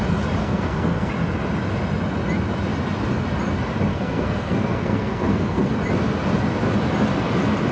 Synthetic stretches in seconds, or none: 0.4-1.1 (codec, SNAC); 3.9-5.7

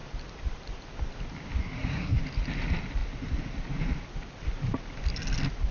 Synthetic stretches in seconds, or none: 1.6-2.2 (codec, SNAC)

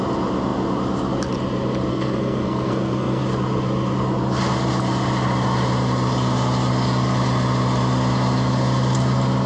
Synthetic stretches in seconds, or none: 1.9-3.2 (codec, SNAC)

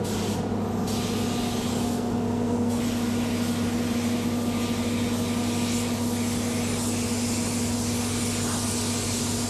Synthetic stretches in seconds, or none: 1.7-2.8 (codec, SNAC)